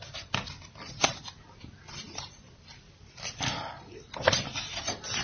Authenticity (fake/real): fake